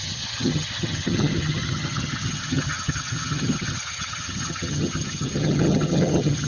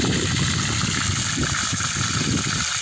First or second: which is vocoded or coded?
first